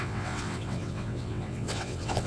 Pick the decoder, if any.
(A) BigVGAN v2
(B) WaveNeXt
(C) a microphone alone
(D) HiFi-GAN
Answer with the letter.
B